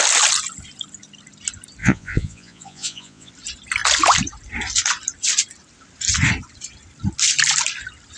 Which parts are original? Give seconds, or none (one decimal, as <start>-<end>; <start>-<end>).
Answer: 0.0-1.8; 3.3-8.2